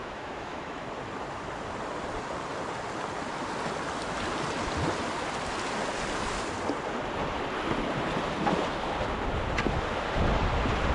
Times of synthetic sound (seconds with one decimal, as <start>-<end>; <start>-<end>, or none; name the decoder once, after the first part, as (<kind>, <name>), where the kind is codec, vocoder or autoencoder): 0.0-0.9 (autoencoder, DAC-VAE)